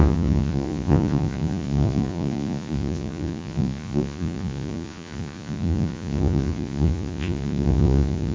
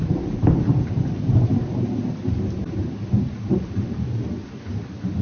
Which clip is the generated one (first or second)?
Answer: first